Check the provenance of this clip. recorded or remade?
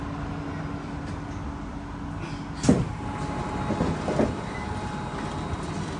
recorded